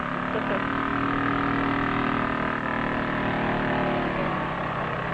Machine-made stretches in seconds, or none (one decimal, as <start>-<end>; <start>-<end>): 4.2-5.1